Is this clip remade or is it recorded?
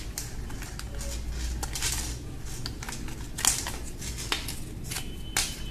recorded